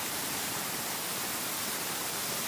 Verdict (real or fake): real